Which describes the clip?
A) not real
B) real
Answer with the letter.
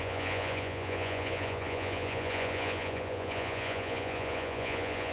A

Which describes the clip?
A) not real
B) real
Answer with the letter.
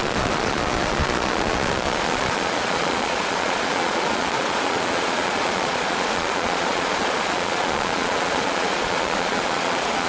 A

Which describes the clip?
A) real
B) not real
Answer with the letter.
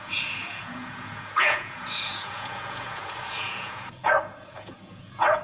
B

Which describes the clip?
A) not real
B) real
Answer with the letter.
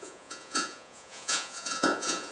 A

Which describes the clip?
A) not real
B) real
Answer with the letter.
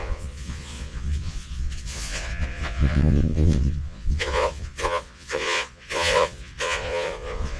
A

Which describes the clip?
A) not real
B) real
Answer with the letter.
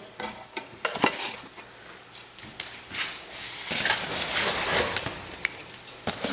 B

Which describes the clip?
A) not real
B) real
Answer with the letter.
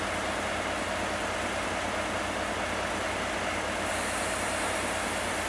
B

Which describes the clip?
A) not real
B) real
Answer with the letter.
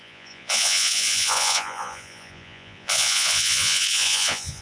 A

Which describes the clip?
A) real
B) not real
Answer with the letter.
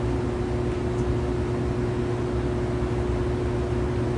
A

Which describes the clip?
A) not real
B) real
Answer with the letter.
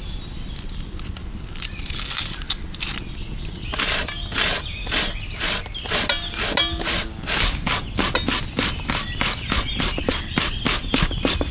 B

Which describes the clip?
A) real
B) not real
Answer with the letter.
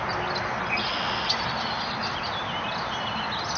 A